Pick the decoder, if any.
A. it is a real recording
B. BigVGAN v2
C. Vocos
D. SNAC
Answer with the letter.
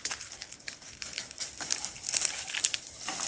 A